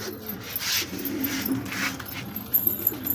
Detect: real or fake real